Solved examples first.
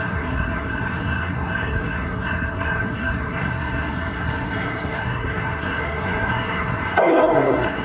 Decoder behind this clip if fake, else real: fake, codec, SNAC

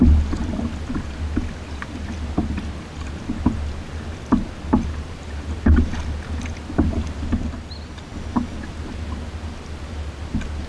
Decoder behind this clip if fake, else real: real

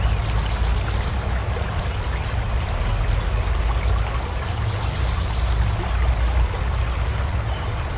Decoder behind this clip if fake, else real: real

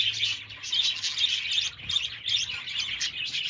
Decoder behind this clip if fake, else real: real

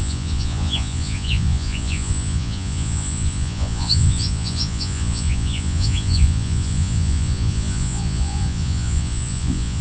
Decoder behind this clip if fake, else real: fake, vocoder, Vocos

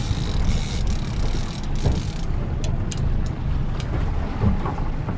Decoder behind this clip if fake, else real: real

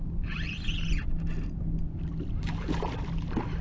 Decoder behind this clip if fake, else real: real